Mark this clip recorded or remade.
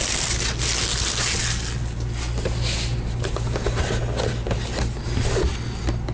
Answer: recorded